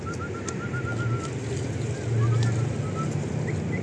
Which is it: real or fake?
real